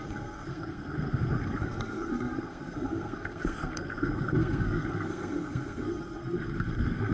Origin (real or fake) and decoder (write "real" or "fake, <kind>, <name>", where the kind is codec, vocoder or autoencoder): fake, codec, SNAC